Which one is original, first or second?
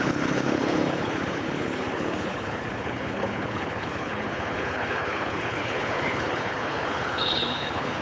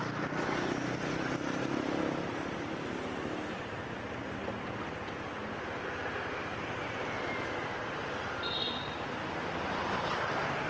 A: second